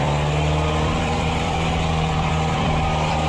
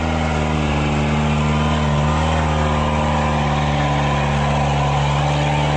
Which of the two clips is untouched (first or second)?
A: second